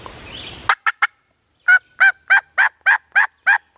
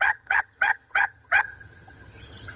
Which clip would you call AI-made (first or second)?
second